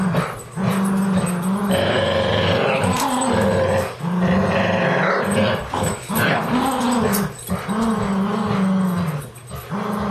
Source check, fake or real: real